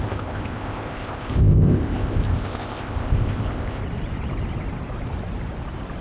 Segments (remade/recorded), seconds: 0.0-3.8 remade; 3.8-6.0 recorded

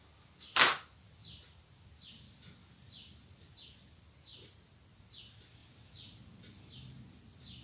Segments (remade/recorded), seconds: 0.0-7.6 recorded

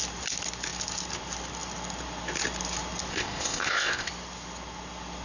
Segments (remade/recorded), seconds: 0.0-3.1 recorded; 3.1-4.1 remade; 4.1-5.2 recorded

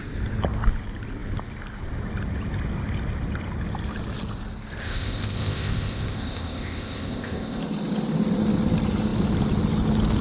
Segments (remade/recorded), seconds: 0.0-4.8 recorded; 4.8-7.6 remade; 7.6-10.2 recorded

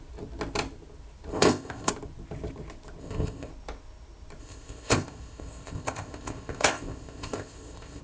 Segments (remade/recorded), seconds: 0.0-1.3 recorded; 1.3-1.9 remade; 1.9-3.0 recorded; 3.0-3.5 remade; 3.5-4.4 recorded; 4.4-8.0 remade